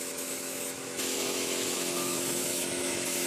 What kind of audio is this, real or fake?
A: fake